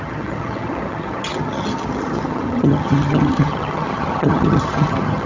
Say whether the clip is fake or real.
fake